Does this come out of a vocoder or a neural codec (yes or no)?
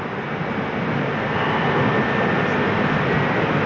no